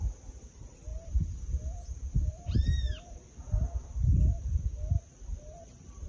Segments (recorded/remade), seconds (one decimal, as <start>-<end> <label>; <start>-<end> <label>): 0.0-0.9 recorded; 0.9-4.4 remade; 4.4-6.1 recorded